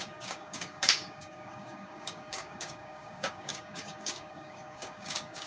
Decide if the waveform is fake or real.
fake